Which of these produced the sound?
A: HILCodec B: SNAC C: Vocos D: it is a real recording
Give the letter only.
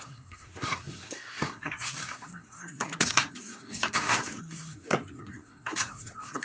B